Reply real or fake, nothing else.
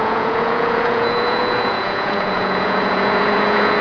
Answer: fake